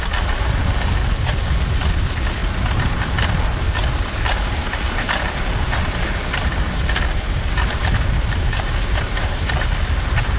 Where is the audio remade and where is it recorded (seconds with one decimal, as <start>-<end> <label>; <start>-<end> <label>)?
0.0-2.4 recorded; 2.4-5.4 remade; 5.4-6.2 recorded; 6.2-9.5 remade; 9.5-10.4 recorded